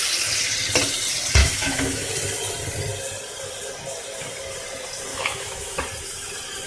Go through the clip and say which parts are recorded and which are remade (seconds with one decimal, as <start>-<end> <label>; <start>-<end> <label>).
0.0-1.4 recorded; 1.4-2.1 remade; 2.1-5.1 recorded; 5.1-5.8 remade; 5.8-6.7 recorded